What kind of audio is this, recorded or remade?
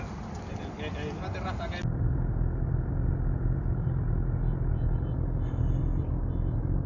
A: recorded